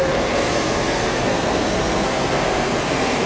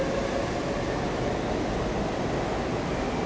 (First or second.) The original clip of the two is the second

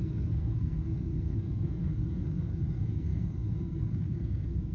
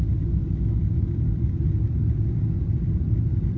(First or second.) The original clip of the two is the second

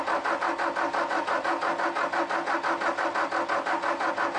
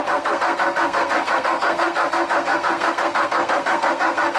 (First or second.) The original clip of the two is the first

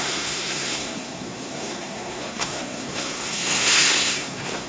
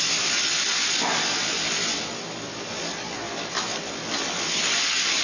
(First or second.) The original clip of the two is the second